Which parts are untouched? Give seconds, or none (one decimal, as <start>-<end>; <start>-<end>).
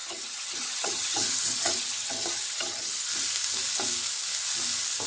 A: 3.1-5.1